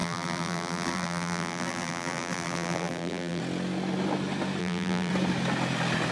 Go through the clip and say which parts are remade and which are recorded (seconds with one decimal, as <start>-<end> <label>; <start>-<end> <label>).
0.0-3.4 remade; 3.4-4.6 recorded; 4.6-5.1 remade; 5.1-6.1 recorded